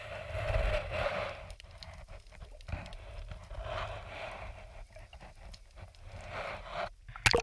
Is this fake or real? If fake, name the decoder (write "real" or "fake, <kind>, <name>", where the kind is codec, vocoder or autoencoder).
real